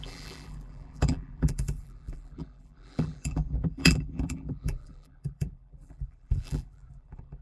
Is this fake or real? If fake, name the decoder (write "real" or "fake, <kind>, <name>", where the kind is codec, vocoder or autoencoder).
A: fake, vocoder, BigVGAN v2